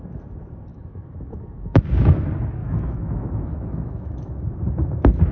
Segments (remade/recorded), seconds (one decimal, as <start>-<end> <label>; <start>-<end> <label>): 0.0-0.7 recorded; 0.7-1.8 remade; 1.8-2.6 recorded; 2.6-4.4 remade; 4.4-5.3 recorded

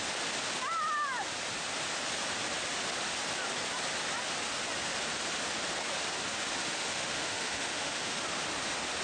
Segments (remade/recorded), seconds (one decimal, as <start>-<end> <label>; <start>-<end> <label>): 0.0-6.6 recorded; 6.6-8.2 remade; 8.2-9.0 recorded

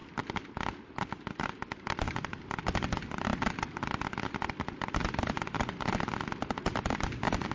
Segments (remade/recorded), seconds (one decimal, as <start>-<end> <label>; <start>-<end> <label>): 0.0-7.5 recorded

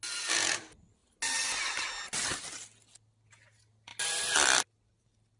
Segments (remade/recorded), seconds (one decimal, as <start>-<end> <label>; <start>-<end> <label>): 0.0-5.4 recorded

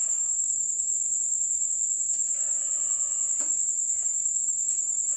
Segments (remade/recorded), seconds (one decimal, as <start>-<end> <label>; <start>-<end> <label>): 0.0-0.9 remade; 0.9-4.0 recorded; 4.0-5.2 remade

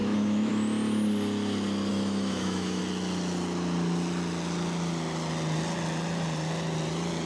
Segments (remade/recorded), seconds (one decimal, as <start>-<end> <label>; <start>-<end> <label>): 0.0-0.5 remade; 0.5-1.9 recorded; 1.9-2.8 remade; 2.8-7.3 recorded

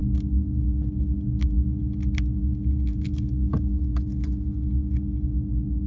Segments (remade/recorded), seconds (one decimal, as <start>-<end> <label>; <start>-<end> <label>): 0.0-5.9 recorded

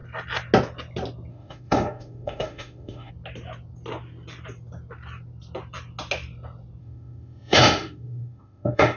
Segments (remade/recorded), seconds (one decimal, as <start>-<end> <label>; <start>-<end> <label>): 0.0-1.3 recorded; 1.3-3.1 remade; 3.1-6.8 recorded; 6.8-9.0 remade